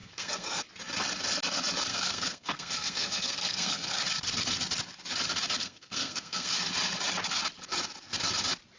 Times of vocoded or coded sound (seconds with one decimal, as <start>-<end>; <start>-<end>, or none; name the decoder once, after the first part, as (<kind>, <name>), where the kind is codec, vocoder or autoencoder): 0.0-0.6 (codec, SNAC); 1.9-4.0; 5.6-6.5

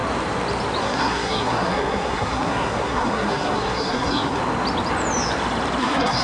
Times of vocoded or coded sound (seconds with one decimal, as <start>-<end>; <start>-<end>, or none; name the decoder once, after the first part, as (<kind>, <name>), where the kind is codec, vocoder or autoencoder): 0.8-4.4 (codec, SNAC); 5.8-6.2

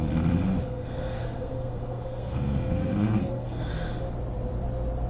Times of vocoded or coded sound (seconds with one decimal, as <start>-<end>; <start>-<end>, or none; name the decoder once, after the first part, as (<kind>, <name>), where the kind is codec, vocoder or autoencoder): 0.6-3.7 (codec, SNAC)

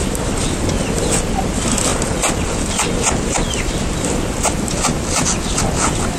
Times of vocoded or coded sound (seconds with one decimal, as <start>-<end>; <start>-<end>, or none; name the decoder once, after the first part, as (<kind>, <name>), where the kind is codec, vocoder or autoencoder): none

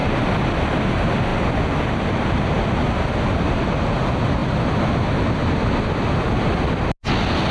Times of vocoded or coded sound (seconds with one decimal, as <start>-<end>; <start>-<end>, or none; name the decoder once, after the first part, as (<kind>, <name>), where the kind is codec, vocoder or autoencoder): none